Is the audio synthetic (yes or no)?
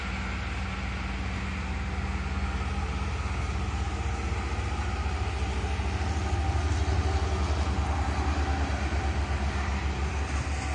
no